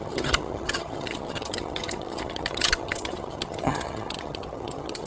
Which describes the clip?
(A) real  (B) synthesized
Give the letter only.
B